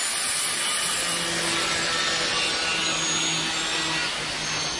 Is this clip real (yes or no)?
yes